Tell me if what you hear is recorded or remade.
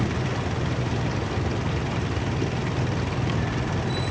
recorded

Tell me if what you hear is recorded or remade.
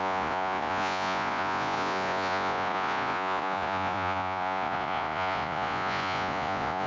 remade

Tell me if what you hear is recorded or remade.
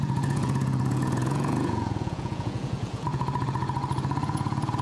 remade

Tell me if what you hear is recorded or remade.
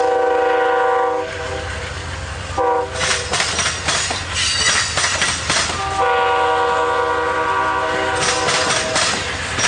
recorded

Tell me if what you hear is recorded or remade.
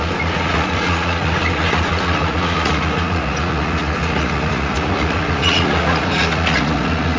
remade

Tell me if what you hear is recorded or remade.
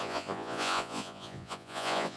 remade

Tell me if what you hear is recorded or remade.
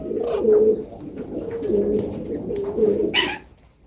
recorded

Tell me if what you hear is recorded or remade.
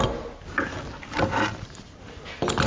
recorded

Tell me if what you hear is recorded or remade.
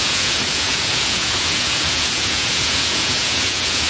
remade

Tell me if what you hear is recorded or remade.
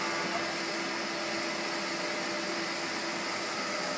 recorded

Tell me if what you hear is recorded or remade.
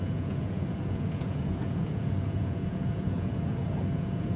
remade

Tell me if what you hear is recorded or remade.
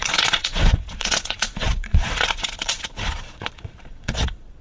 remade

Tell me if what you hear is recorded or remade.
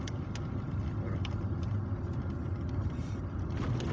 recorded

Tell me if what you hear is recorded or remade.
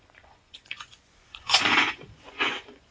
remade